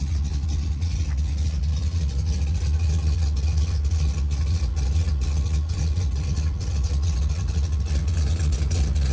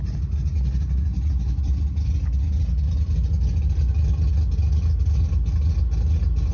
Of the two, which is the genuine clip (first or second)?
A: second